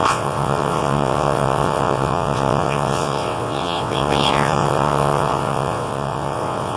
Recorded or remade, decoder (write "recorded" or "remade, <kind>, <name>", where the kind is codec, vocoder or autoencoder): remade, vocoder, WaveNeXt